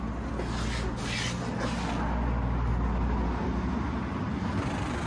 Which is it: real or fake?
real